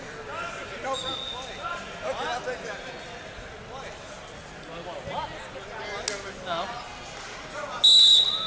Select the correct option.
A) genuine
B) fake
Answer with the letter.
A